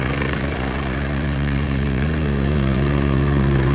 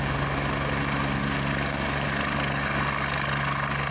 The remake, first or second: first